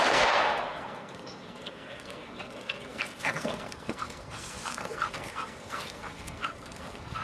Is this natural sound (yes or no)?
no